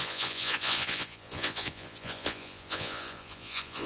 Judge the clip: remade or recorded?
remade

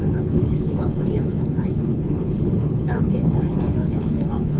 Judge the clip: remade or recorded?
remade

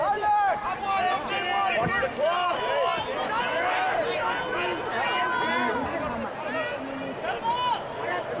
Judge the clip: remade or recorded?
recorded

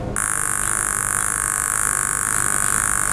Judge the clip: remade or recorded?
recorded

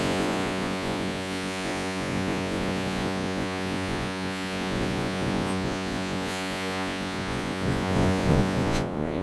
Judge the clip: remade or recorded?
remade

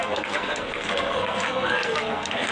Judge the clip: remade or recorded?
remade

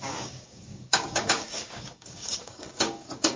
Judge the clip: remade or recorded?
remade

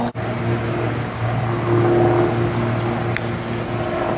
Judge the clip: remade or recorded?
recorded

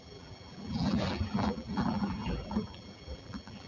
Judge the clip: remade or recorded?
remade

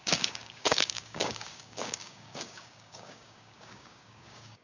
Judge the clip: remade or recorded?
remade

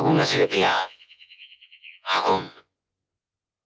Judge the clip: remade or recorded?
remade